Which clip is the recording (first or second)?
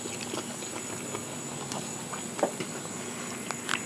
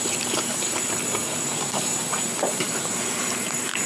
first